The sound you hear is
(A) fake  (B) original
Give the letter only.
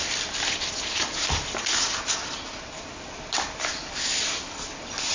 B